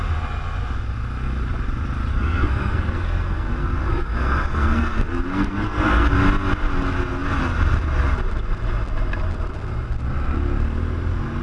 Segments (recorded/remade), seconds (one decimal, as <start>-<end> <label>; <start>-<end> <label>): 0.0-2.1 recorded; 2.1-6.1 remade; 6.1-11.4 recorded